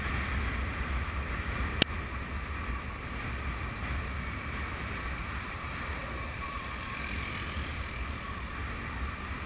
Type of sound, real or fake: real